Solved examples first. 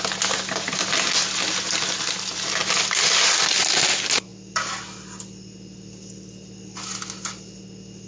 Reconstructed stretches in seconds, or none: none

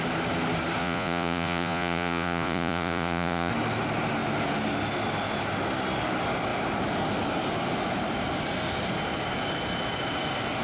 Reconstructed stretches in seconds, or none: 0.8-3.5 (vocoder, Vocos)

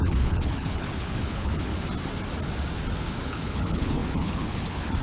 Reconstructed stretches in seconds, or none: 0.0-1.7 (codec, HILCodec); 3.0-5.0